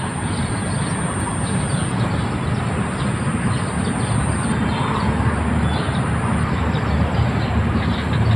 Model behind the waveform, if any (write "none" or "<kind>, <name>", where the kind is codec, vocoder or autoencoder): none